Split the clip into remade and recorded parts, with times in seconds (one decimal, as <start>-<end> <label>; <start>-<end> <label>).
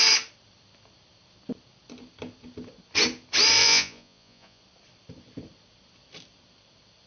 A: 0.0-3.6 recorded; 3.6-4.6 remade; 4.6-7.1 recorded